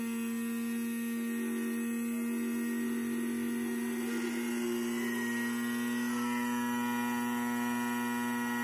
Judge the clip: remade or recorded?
recorded